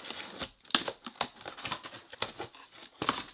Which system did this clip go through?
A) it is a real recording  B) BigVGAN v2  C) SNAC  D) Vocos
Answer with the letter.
A